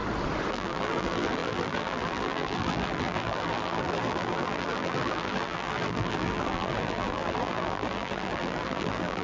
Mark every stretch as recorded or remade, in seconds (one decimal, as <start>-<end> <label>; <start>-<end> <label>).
0.0-0.5 recorded; 0.5-9.2 remade